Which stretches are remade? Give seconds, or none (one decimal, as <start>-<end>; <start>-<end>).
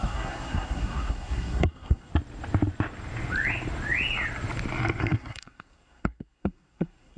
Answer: 0.0-2.1; 5.0-7.2